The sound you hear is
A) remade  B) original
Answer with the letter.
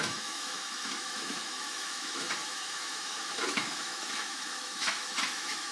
A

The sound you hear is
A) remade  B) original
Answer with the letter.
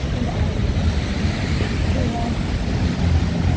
B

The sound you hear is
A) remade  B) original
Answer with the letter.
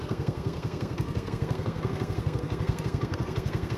A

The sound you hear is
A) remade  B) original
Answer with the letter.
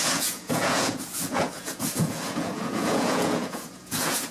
A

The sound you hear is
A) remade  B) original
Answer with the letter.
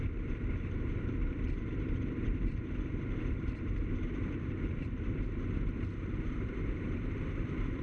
A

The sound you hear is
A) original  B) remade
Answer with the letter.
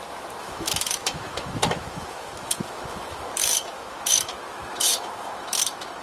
B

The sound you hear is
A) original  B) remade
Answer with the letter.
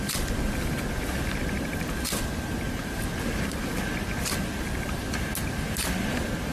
A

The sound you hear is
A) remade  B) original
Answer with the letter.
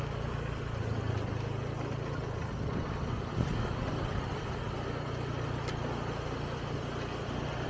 B